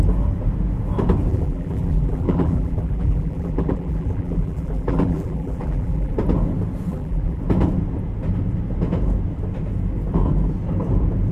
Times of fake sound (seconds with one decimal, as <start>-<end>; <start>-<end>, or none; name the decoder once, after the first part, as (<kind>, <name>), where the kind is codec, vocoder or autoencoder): 1.3-6.1 (vocoder, BigVGAN v2); 6.9-7.4